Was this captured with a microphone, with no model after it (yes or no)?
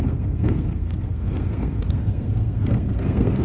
no